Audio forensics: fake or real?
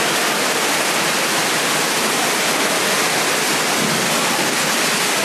real